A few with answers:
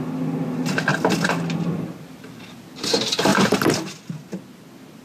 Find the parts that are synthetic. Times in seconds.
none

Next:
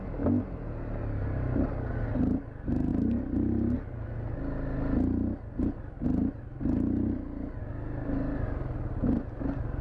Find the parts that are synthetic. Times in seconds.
none

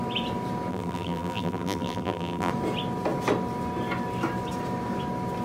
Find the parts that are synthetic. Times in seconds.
0.7-2.5 (vocoder, BigVGAN v2)

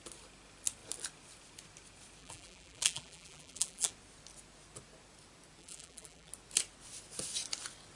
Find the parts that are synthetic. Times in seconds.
2.2-3.9 (vocoder, BigVGAN v2); 5.6-6.3